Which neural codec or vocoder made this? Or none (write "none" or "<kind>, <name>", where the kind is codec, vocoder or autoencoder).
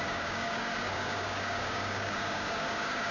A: codec, DAC